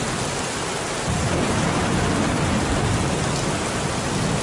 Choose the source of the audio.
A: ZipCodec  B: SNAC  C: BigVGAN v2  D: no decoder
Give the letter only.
D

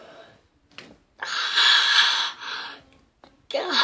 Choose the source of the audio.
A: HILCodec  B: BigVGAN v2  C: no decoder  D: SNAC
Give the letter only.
C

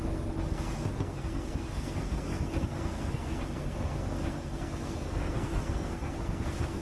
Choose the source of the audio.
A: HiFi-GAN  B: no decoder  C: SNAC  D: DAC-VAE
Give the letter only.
C